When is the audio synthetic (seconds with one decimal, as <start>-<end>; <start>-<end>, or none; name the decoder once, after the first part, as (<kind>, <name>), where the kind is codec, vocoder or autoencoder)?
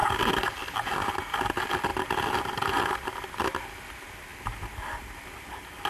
none